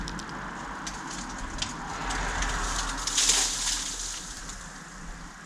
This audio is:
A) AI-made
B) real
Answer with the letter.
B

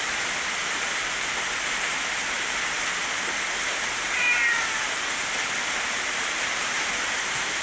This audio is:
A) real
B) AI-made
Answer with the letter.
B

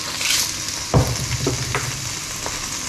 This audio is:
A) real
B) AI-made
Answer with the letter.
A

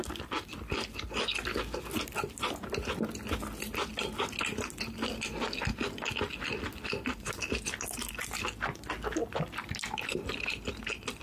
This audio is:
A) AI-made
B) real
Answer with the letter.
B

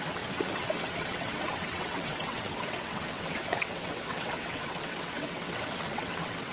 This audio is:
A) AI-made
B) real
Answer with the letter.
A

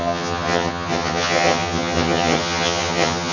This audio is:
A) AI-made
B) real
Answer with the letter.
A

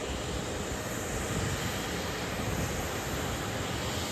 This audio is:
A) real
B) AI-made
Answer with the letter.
A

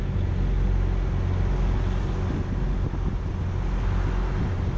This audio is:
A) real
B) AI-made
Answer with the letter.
A